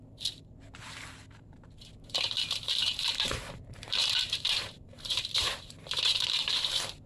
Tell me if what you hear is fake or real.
fake